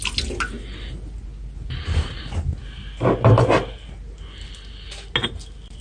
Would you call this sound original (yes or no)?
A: yes